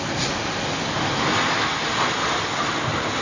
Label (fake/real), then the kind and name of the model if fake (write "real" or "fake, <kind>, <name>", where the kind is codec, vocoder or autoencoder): real